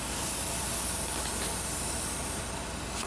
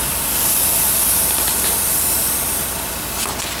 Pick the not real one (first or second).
second